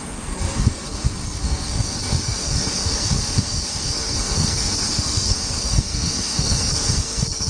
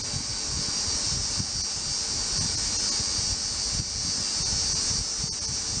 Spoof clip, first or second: first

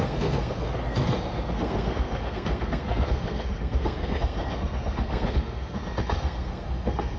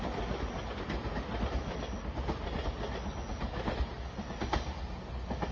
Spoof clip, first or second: first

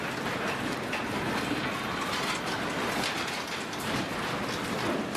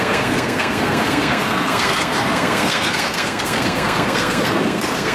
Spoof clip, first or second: second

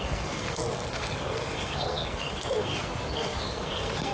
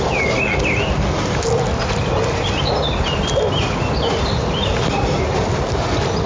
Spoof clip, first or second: first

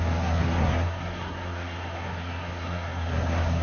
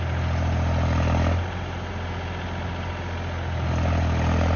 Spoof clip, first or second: first